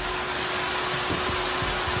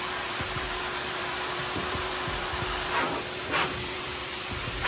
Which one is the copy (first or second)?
second